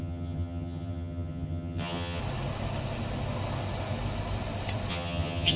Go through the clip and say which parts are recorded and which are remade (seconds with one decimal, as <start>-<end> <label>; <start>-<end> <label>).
0.0-2.2 remade; 2.2-4.9 recorded; 4.9-5.6 remade